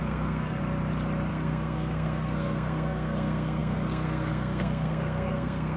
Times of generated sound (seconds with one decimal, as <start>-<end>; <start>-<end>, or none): 0.0-0.6; 1.3-5.8